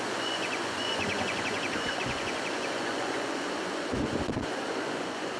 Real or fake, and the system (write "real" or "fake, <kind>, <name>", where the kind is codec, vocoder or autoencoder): fake, vocoder, Vocos